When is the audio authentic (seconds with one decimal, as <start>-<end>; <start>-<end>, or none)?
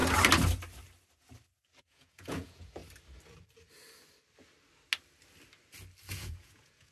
0.0-1.8; 2.8-6.1